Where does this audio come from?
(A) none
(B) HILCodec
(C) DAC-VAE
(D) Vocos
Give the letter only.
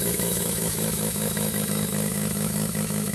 C